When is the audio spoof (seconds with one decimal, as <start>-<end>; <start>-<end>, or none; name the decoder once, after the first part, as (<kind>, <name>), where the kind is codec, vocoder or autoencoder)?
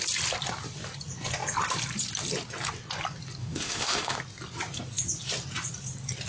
3.4-4.2 (autoencoder, DAC-VAE)